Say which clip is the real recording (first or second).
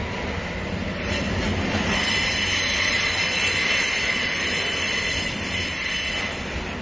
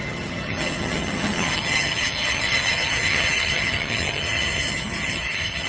first